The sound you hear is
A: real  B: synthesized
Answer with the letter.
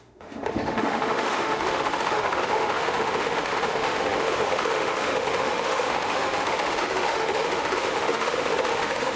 B